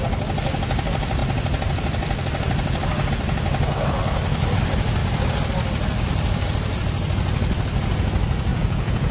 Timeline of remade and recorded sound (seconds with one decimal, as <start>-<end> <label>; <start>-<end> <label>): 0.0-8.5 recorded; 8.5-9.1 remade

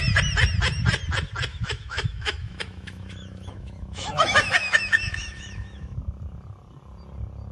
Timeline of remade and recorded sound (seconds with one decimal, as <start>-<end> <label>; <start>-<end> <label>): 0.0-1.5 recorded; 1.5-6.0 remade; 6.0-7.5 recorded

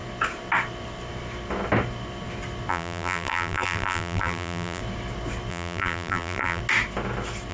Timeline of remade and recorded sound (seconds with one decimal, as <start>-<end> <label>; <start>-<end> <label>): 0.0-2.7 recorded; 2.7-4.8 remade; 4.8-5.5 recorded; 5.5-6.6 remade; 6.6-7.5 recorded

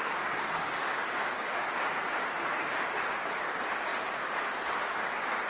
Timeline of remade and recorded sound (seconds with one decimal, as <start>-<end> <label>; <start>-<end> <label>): 0.0-3.3 remade; 3.3-5.5 recorded

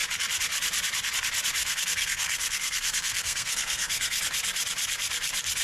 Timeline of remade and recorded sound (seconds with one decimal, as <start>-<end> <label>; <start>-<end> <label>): 0.0-1.6 recorded; 1.6-4.2 remade; 4.2-5.6 recorded